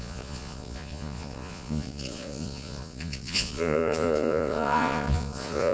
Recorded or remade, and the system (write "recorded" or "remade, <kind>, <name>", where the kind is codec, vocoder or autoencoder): remade, vocoder, Vocos